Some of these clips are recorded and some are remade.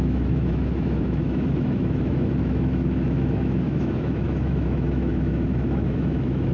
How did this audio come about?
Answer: remade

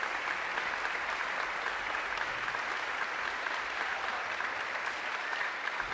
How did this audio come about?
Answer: recorded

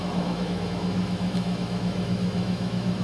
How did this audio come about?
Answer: remade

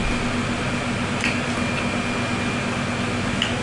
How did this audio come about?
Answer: recorded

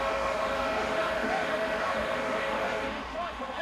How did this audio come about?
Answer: remade